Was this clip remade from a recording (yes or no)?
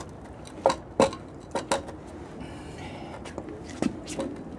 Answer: no